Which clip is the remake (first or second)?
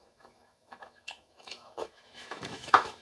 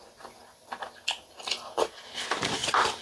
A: first